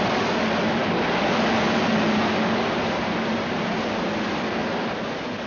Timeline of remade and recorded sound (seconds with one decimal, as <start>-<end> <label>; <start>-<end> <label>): 0.0-5.5 recorded